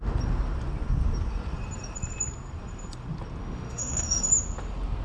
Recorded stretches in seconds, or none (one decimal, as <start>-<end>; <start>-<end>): 0.0-3.4; 4.2-5.0

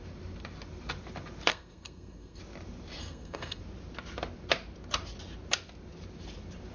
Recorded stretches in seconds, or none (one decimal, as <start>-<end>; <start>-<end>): 0.0-1.5; 2.4-3.0; 3.6-6.7

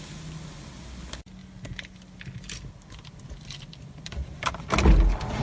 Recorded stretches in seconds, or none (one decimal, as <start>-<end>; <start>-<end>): 0.0-1.4; 4.6-5.4